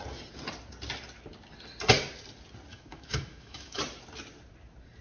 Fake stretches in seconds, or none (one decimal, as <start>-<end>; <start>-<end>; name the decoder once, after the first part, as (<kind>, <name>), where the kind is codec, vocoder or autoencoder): 2.7-3.8 (autoencoder, DAC-VAE)